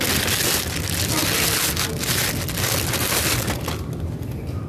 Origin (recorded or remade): recorded